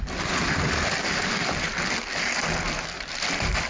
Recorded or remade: remade